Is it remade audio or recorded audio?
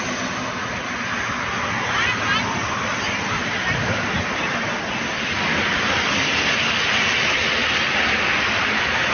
recorded